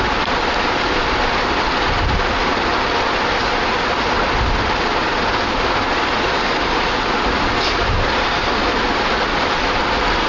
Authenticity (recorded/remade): recorded